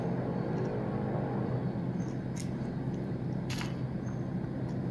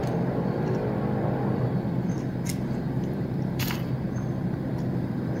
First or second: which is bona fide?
first